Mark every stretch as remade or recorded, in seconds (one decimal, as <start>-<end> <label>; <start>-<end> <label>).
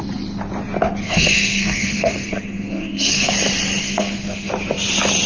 0.0-1.0 recorded; 1.0-3.3 remade; 3.3-3.8 recorded; 3.8-4.5 remade; 4.5-5.3 recorded